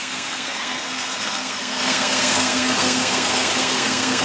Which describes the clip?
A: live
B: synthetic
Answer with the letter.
B